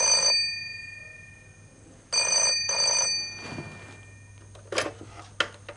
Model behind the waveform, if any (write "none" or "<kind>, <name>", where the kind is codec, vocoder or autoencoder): none